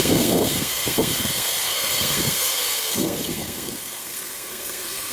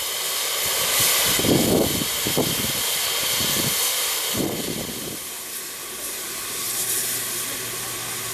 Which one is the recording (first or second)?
second